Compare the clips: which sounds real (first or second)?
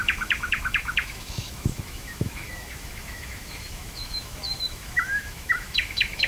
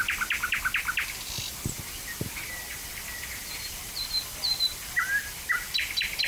second